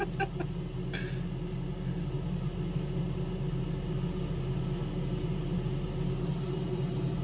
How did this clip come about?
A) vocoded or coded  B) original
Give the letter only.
B